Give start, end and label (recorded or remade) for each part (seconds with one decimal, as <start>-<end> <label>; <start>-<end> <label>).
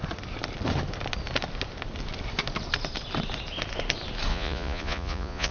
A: 0.0-4.3 recorded; 4.3-5.5 remade